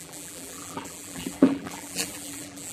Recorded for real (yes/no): no